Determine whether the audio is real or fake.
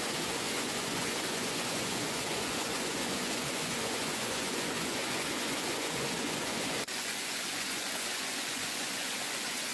fake